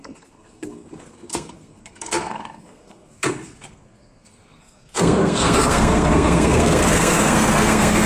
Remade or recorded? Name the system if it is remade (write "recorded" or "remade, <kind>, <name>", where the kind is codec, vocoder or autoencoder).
remade, codec, SNAC